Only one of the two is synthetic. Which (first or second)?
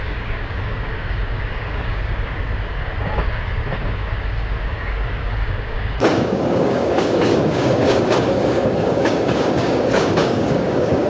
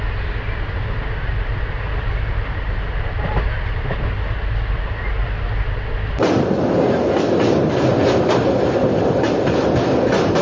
first